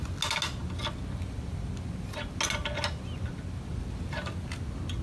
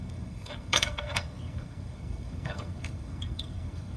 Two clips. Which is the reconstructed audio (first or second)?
second